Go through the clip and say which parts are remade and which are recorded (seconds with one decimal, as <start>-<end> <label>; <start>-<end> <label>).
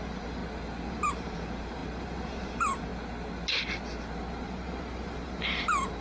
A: 0.0-0.4 remade; 0.4-0.9 recorded; 0.9-2.9 remade; 2.9-4.3 recorded; 4.3-6.0 remade